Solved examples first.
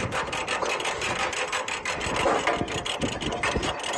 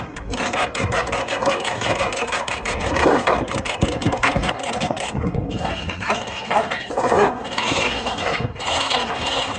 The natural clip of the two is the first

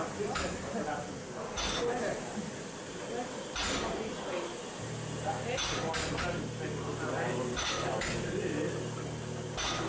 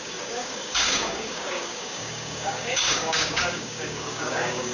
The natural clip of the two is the first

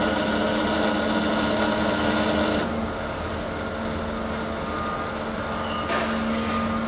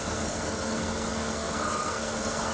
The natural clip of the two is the first